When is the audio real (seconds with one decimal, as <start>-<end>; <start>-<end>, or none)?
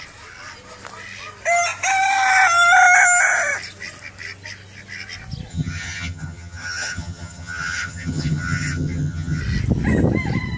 0.0-5.5; 9.4-10.6